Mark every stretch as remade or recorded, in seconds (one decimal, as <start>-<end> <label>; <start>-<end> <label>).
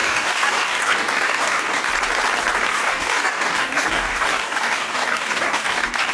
0.0-1.9 remade; 1.9-2.7 recorded; 2.7-6.1 remade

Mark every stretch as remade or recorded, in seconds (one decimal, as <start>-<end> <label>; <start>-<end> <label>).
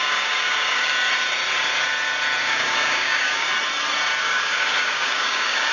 0.0-0.9 remade; 0.9-2.4 recorded; 2.4-3.5 remade; 3.5-4.2 recorded; 4.2-5.7 remade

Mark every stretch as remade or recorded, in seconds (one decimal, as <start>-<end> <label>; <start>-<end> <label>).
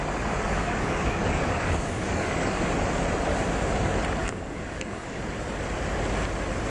0.0-0.5 recorded; 0.5-2.6 remade; 2.6-4.2 recorded; 4.2-5.2 remade; 5.2-6.7 recorded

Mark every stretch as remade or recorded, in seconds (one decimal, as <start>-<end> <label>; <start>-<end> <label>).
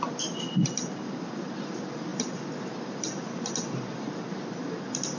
0.0-5.2 recorded